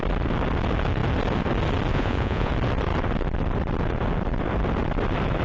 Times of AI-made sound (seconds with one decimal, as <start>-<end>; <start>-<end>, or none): 1.9-2.5